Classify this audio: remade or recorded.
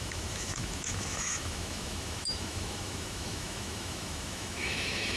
remade